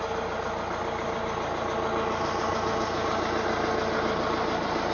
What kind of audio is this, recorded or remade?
recorded